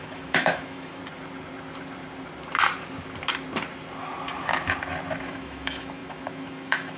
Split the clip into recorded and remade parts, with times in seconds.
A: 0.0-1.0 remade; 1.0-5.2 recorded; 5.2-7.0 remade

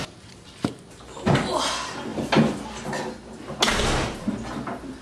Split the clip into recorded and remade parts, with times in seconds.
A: 0.0-5.0 recorded

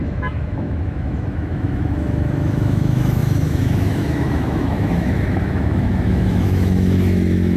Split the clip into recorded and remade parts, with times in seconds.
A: 0.0-7.6 remade

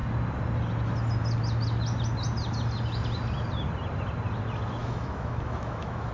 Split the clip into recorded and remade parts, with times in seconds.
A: 0.0-4.8 recorded; 4.8-6.1 remade

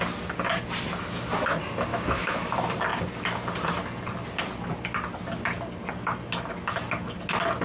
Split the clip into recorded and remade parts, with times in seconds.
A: 0.0-1.9 recorded; 1.9-2.5 remade; 2.5-7.6 recorded